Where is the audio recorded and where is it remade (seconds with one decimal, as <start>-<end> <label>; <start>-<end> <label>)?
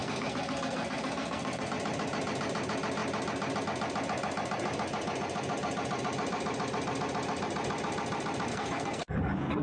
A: 0.0-1.7 remade; 1.7-8.5 recorded; 8.5-9.1 remade; 9.1-9.6 recorded